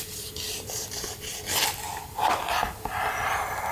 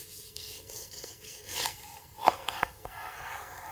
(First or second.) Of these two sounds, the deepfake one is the second